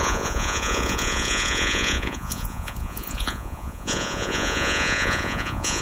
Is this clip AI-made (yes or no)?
yes